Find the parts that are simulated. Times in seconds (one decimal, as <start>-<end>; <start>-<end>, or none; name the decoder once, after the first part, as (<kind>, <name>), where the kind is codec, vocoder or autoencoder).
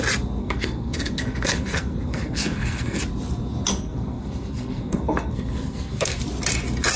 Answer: 0.4-3.0 (codec, SNAC); 3.7-6.2